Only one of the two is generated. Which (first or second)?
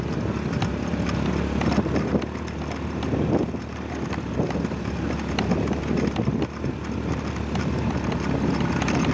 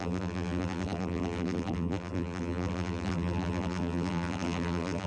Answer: second